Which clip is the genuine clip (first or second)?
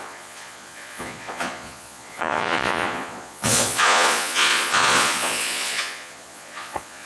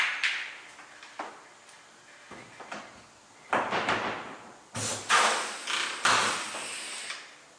second